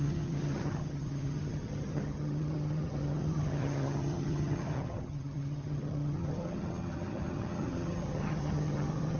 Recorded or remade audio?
remade